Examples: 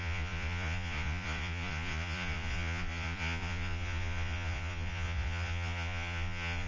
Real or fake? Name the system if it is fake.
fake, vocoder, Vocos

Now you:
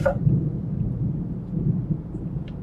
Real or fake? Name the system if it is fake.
real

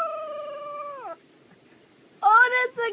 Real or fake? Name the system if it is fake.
real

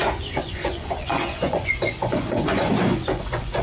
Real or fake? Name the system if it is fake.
fake, vocoder, Vocos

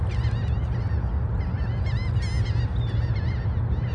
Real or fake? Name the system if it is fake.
real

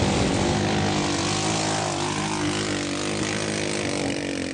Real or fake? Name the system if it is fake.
real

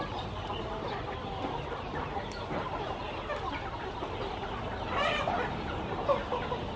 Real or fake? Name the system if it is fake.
real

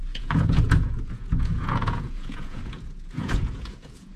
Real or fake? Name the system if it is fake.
fake, vocoder, Vocos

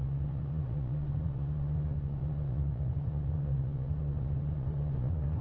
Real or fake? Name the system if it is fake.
fake, vocoder, Vocos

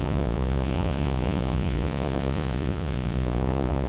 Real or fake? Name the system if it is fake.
fake, vocoder, Vocos